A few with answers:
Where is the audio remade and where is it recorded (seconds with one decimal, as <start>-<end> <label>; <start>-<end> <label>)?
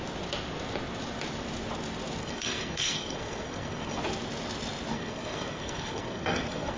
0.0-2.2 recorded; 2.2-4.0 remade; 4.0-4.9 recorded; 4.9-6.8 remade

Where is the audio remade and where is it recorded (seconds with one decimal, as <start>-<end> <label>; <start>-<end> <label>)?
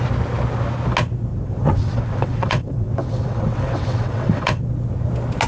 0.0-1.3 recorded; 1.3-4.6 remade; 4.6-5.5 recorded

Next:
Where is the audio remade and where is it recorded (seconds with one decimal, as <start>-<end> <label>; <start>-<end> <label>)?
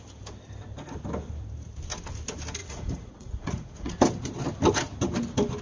0.0-2.6 recorded; 2.6-3.9 remade; 3.9-5.6 recorded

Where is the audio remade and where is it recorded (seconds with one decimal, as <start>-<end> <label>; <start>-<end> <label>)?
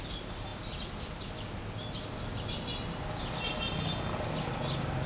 0.0-5.1 recorded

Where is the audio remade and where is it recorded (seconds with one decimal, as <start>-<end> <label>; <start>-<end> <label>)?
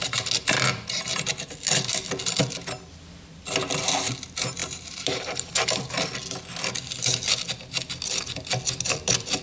0.0-4.6 recorded; 4.6-5.8 remade; 5.8-9.4 recorded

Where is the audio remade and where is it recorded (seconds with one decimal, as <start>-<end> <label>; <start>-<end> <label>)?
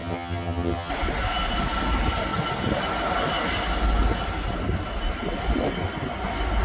0.0-0.9 remade; 0.9-6.6 recorded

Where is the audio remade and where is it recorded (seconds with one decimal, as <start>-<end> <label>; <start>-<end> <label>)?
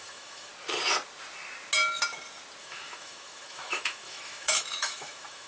0.0-0.5 remade; 0.5-2.6 recorded; 2.6-5.5 remade